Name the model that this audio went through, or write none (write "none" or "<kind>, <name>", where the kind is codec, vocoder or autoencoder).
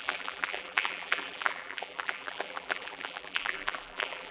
vocoder, BigVGAN v2